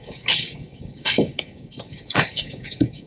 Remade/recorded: remade